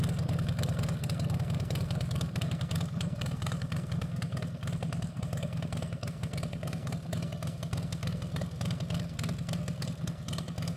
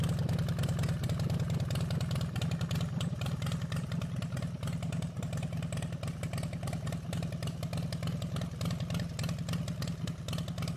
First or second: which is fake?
first